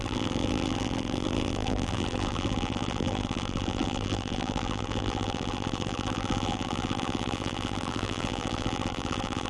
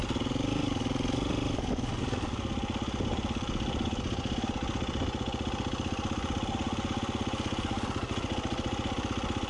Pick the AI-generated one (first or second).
first